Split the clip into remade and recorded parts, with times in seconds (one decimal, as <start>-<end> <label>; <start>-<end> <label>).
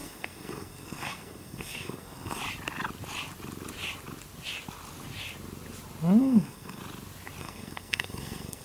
0.0-2.4 remade; 2.4-6.2 recorded; 6.2-6.8 remade; 6.8-7.4 recorded; 7.4-8.6 remade